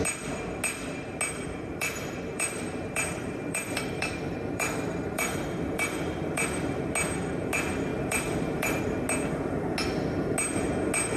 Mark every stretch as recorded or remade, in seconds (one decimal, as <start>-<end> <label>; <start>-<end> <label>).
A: 0.0-1.7 recorded; 1.7-6.8 remade; 6.8-7.9 recorded; 7.9-8.8 remade; 8.8-11.2 recorded